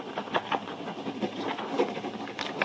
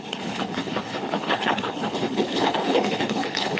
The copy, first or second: second